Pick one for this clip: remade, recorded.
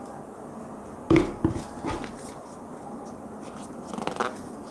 recorded